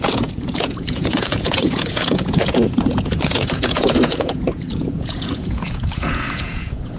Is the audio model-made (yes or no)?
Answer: yes